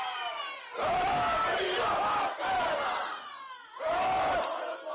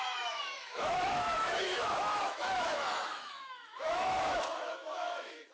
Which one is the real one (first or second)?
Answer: first